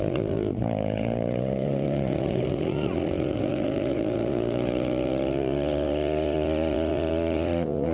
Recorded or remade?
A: remade